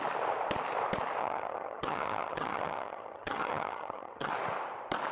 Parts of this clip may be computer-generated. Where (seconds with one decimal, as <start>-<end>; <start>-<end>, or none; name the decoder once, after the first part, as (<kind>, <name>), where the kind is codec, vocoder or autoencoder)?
1.2-4.3 (vocoder, HiFi-GAN)